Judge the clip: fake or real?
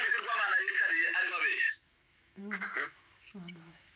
fake